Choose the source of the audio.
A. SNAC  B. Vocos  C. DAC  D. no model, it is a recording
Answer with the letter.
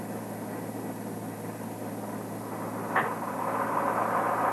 D